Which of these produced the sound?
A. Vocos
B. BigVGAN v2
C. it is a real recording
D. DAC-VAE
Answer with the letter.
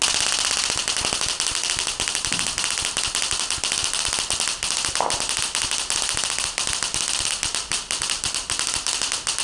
C